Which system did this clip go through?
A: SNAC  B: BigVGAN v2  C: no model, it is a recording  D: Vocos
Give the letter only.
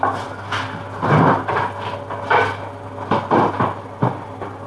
C